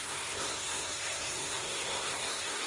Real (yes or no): no